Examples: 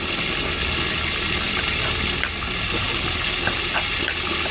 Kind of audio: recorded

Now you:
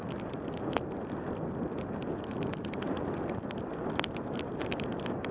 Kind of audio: recorded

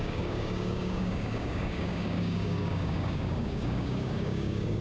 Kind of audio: remade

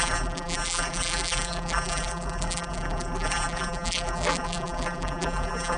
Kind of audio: remade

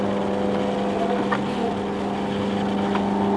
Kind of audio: recorded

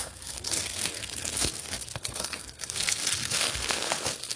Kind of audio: remade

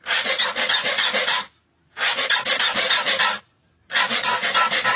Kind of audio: recorded